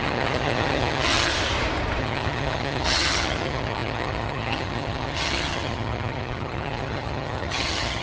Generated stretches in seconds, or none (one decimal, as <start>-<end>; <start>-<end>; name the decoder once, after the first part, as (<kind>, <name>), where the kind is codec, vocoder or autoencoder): 0.0-1.3 (vocoder, HiFi-GAN); 2.0-8.0